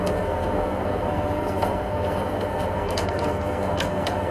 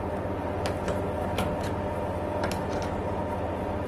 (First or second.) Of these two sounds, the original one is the second